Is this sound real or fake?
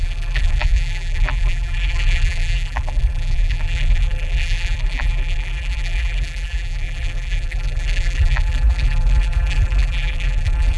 fake